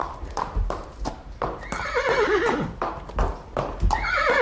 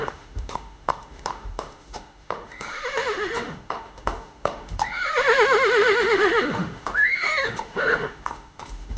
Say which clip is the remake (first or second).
second